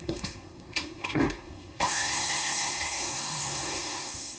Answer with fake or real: fake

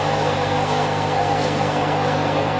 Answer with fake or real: fake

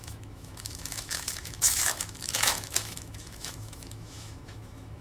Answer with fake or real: fake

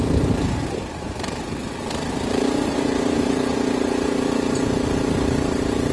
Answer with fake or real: fake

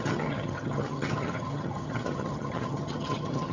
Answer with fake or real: fake